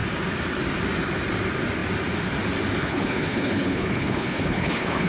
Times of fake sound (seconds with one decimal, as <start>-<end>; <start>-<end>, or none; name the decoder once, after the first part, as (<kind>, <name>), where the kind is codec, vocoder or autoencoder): 2.8-5.1 (codec, HILCodec)

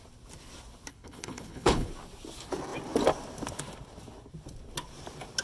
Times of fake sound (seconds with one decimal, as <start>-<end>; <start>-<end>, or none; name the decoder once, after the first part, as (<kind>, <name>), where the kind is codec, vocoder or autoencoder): 0.9-1.9 (codec, HILCodec)

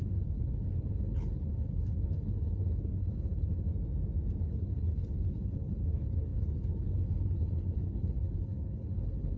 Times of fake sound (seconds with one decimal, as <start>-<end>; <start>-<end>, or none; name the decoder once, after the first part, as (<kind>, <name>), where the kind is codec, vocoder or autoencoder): 0.0-3.7 (codec, HILCodec); 4.4-9.4